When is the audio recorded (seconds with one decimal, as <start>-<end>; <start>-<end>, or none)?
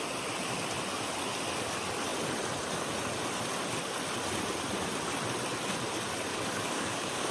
0.0-6.3